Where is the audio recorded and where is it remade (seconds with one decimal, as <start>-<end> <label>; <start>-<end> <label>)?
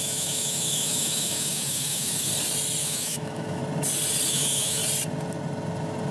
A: 0.0-2.3 remade; 2.3-2.8 recorded; 2.8-3.6 remade; 3.6-4.3 recorded; 4.3-4.8 remade; 4.8-6.1 recorded